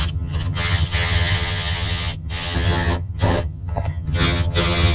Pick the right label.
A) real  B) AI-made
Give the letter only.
B